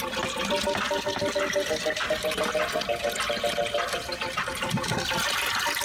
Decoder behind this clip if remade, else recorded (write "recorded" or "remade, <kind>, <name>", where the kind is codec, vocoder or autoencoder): recorded